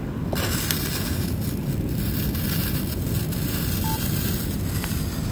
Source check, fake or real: real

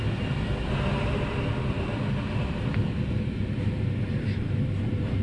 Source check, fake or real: real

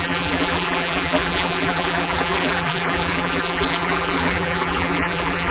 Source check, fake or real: fake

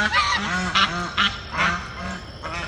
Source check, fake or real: real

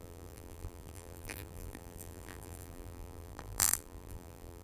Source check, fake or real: fake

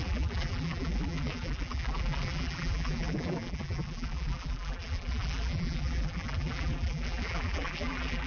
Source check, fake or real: fake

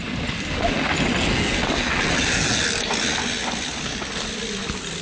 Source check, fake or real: real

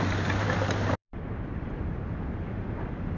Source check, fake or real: fake